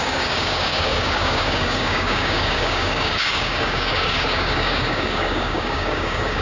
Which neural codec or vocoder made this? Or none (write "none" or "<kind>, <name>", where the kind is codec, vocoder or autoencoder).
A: codec, DAC